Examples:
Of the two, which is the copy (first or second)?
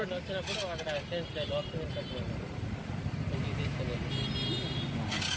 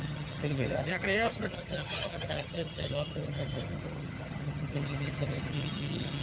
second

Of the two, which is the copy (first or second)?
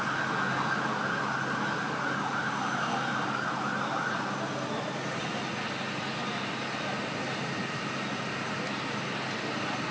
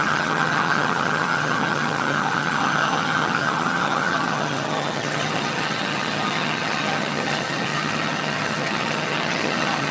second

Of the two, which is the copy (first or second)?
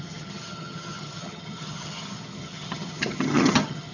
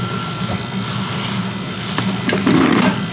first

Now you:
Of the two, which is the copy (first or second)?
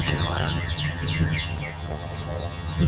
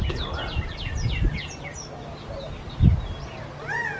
first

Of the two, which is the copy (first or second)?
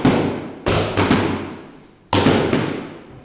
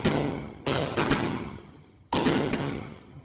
second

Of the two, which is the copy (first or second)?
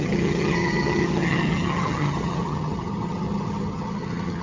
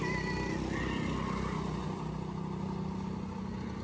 first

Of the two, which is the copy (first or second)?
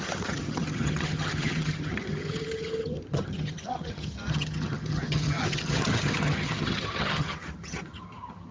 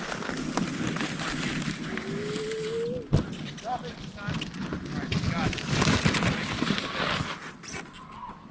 first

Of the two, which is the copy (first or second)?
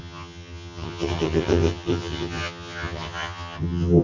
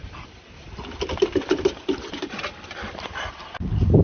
first